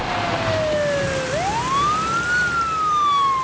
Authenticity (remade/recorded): recorded